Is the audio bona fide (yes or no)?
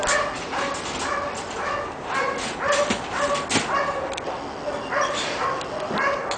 yes